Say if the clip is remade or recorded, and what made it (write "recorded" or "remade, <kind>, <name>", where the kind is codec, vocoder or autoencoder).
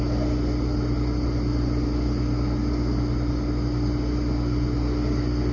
recorded